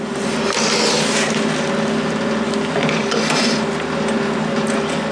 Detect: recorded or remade recorded